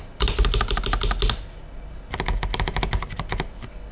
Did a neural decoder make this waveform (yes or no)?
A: no